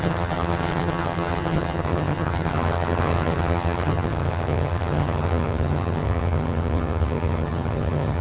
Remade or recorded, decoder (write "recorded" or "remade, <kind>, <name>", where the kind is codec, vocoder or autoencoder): remade, vocoder, HiFi-GAN